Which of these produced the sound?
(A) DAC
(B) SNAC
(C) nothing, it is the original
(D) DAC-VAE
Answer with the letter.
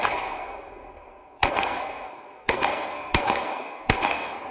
B